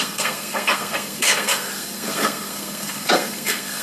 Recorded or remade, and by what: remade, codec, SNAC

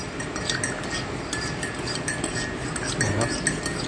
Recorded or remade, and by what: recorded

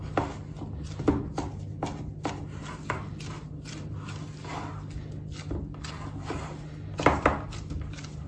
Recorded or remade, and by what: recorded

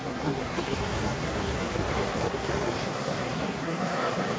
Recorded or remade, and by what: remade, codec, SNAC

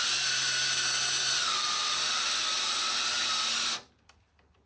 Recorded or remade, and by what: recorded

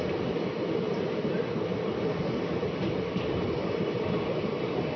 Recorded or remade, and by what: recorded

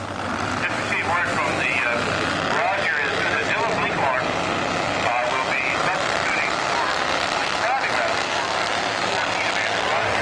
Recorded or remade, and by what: recorded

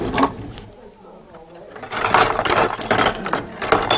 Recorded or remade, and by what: recorded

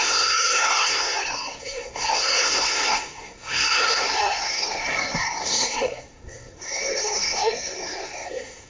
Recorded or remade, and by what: remade, codec, SNAC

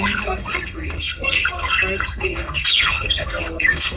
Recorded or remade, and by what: remade, codec, SNAC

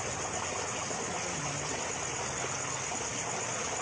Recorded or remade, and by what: recorded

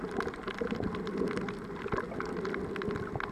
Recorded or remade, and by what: recorded